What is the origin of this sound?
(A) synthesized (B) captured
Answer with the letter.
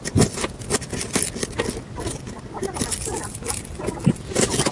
B